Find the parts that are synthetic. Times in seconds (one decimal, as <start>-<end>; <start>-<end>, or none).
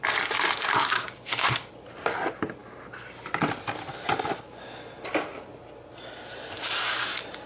0.8-1.7